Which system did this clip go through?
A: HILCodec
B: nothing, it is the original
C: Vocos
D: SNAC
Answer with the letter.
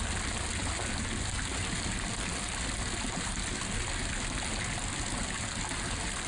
B